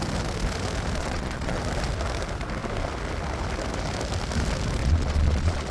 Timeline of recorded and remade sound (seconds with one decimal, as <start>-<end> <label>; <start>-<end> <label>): 0.0-1.0 recorded; 1.0-1.6 remade; 1.6-4.8 recorded; 4.8-5.7 remade